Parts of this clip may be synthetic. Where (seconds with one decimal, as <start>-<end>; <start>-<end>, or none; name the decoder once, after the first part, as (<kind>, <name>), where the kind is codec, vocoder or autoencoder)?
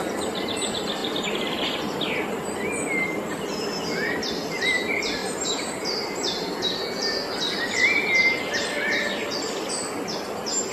none